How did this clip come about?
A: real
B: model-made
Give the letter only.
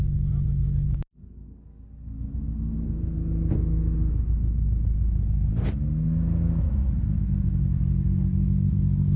A